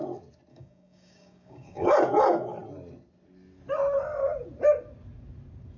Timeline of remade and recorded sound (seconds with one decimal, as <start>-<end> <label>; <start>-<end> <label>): 0.0-0.5 recorded; 0.5-1.9 remade; 1.9-5.8 recorded